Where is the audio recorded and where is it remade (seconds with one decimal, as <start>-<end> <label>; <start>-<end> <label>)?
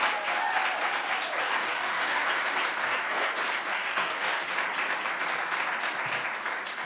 0.0-1.4 recorded; 1.4-2.3 remade; 2.3-2.8 recorded; 2.8-3.3 remade; 3.3-3.7 recorded; 3.7-4.4 remade; 4.4-6.9 recorded